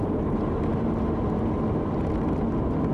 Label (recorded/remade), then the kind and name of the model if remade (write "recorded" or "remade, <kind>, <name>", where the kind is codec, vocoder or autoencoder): recorded